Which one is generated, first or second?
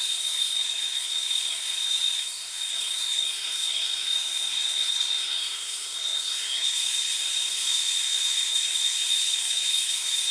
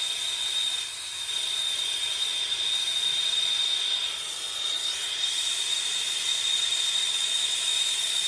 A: first